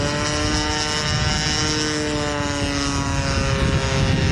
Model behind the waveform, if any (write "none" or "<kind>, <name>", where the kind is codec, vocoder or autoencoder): none